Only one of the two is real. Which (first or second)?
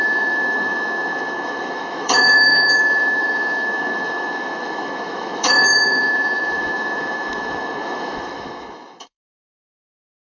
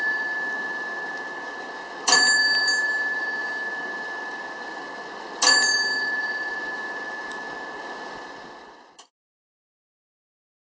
second